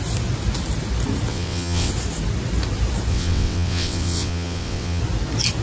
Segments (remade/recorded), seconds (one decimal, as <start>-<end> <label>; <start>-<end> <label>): 0.0-1.3 recorded; 1.3-1.9 remade; 1.9-3.1 recorded; 3.1-5.0 remade; 5.0-5.6 recorded